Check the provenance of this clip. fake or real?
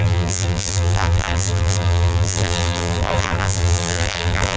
fake